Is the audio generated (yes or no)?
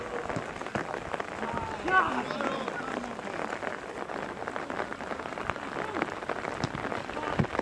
no